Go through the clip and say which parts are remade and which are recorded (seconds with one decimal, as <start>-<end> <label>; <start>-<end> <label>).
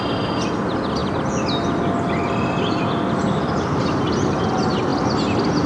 0.0-5.7 recorded